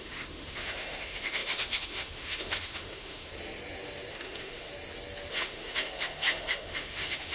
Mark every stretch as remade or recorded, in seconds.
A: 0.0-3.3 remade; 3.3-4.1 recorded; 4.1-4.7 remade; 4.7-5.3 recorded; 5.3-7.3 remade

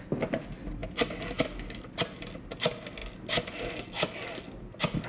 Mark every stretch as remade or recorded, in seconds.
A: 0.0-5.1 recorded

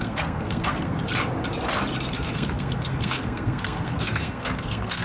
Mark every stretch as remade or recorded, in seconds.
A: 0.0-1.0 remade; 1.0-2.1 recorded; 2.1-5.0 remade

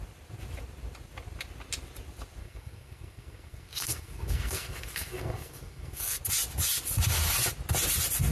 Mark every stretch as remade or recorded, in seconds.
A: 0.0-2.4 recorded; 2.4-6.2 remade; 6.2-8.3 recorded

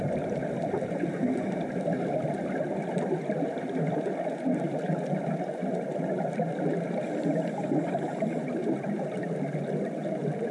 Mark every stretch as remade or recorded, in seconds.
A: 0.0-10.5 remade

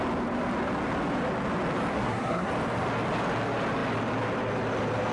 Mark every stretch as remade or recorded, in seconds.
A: 0.0-1.9 recorded; 1.9-2.5 remade; 2.5-5.1 recorded

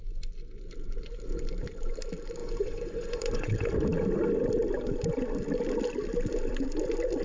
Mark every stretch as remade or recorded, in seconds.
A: 0.0-2.4 recorded; 2.4-3.5 remade; 3.5-7.2 recorded

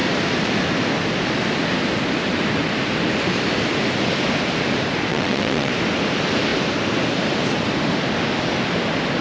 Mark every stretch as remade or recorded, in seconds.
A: 0.0-5.1 recorded; 5.1-5.7 remade; 5.7-9.2 recorded